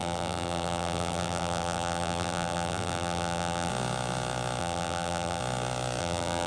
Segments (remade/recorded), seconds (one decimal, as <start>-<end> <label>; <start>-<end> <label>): 0.0-3.7 remade; 3.7-4.6 recorded; 4.6-5.4 remade; 5.4-6.0 recorded; 6.0-6.5 remade